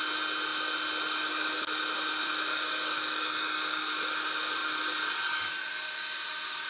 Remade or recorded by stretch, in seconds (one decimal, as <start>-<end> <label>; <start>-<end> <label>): 0.0-2.5 recorded; 2.5-3.9 remade; 3.9-6.7 recorded